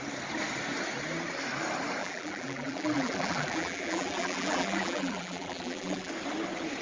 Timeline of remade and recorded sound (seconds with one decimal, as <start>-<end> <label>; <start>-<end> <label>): 0.0-2.0 recorded; 2.0-6.1 remade; 6.1-6.8 recorded